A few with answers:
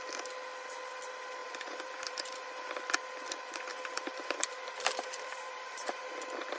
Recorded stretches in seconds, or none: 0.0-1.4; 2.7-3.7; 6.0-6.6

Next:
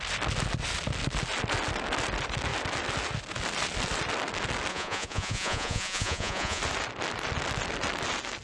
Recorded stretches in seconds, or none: 0.0-4.7; 6.6-8.4

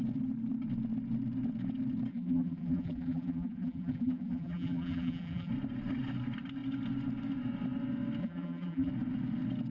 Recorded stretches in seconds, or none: 0.0-2.1; 5.5-8.2; 8.9-9.7

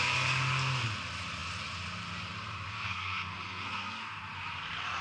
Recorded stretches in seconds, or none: 0.0-2.7; 4.2-5.0

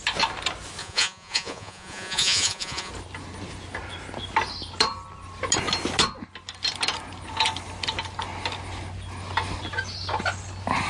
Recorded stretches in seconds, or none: 0.0-0.8; 2.9-10.9

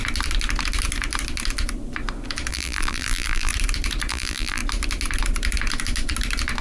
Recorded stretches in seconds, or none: 0.0-2.5; 3.5-4.1; 4.6-6.6